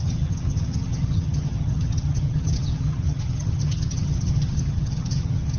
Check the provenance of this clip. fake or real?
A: fake